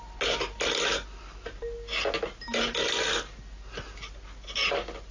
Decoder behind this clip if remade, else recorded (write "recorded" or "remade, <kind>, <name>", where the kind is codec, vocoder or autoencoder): recorded